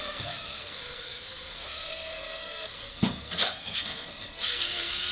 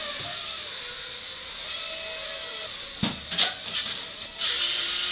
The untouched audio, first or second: second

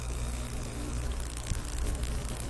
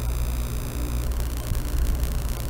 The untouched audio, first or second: second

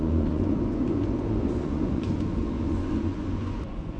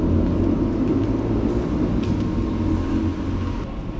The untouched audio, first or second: second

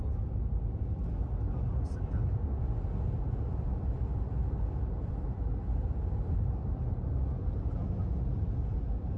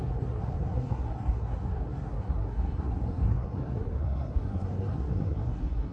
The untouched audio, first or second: first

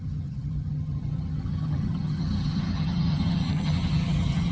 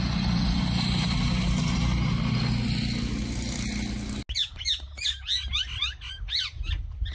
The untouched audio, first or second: second